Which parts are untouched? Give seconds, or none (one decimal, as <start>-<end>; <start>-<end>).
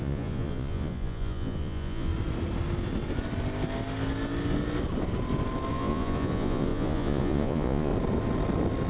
2.1-5.7; 7.9-8.9